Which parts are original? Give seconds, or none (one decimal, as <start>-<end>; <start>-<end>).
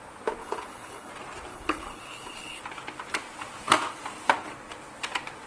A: 0.0-0.4; 1.1-1.5; 2.6-5.5